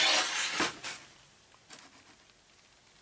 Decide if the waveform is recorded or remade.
recorded